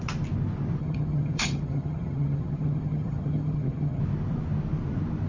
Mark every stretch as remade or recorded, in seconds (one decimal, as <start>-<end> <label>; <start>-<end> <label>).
0.0-0.8 recorded; 0.8-4.0 remade; 4.0-5.3 recorded